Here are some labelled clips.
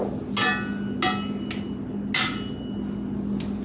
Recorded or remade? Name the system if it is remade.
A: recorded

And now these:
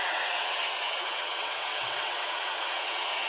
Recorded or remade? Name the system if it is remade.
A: remade, vocoder, WaveNeXt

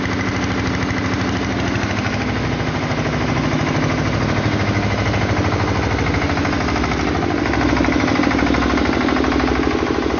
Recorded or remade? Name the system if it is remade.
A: recorded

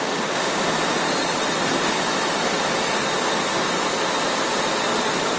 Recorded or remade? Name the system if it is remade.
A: recorded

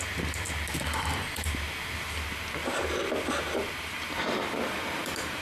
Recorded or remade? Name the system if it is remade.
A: recorded